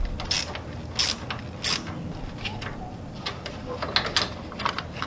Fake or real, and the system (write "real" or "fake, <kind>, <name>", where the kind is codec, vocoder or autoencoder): real